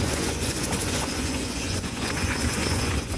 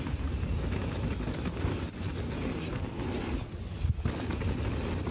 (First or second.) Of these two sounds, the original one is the second